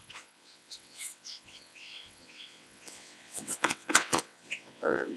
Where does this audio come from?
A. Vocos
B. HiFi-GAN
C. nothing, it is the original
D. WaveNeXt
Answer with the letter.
D